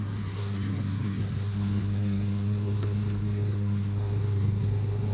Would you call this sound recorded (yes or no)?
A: no